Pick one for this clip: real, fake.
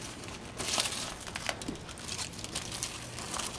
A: real